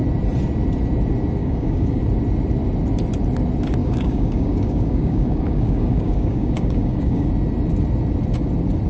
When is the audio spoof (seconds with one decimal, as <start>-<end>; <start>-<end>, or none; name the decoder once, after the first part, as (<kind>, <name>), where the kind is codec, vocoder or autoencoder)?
1.4-2.0 (codec, DAC); 3.8-7.3